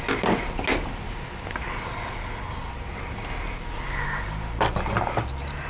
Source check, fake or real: real